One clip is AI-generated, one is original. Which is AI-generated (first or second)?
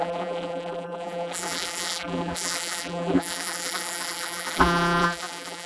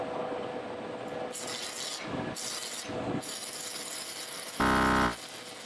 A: first